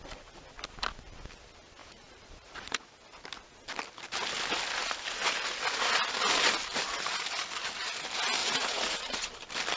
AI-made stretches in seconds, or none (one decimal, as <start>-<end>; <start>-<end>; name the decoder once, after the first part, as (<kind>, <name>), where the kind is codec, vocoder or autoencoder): 1.8-2.9 (vocoder, Vocos); 8.4-9.3